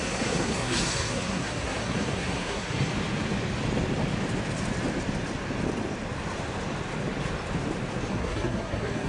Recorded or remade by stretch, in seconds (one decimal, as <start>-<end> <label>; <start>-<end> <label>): 0.0-2.9 remade; 2.9-8.1 recorded; 8.1-9.1 remade